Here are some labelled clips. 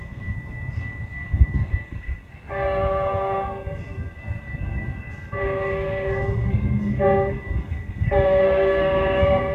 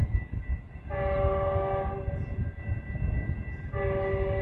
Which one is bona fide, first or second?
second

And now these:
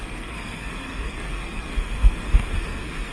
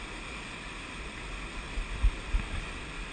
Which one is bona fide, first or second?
second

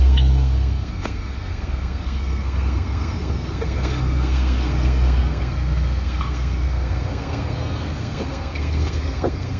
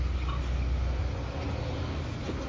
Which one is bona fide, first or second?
second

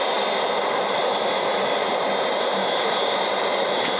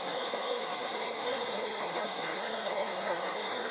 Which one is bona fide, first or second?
first